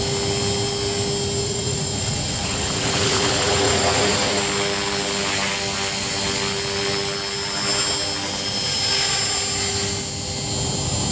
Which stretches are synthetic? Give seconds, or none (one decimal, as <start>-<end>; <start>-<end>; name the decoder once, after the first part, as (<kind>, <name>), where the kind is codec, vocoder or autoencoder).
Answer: 1.4-4.4 (vocoder, Vocos)